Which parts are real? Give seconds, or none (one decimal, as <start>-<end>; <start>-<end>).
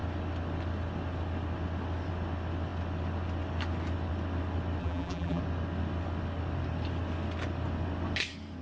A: 0.0-4.8; 5.4-8.6